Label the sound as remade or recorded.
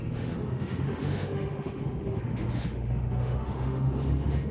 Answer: remade